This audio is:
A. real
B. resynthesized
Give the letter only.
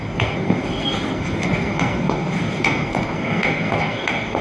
B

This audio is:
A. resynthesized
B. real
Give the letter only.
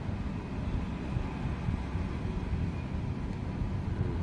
B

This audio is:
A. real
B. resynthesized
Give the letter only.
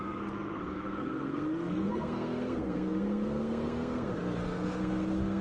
B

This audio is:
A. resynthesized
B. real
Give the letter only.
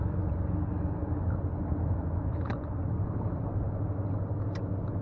B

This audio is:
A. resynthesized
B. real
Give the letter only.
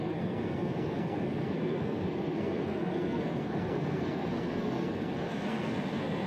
A